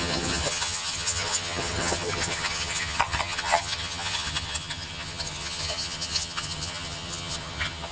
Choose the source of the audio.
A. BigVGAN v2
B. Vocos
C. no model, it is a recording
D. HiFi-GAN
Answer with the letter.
D